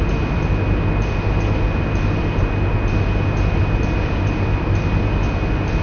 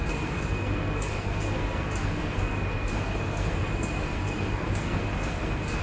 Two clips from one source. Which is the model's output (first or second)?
second